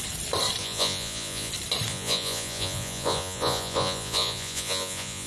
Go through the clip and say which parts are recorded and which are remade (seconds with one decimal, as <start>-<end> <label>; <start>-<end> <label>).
0.0-0.6 recorded; 0.6-1.5 remade; 1.5-1.9 recorded; 1.9-5.3 remade